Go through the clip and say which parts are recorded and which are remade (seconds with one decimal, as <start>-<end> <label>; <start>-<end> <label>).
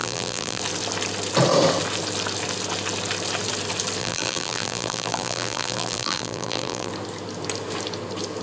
0.0-0.6 remade; 0.6-4.0 recorded; 4.0-6.9 remade; 6.9-8.4 recorded